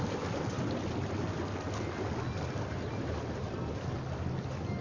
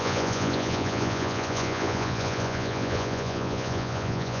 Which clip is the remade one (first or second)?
second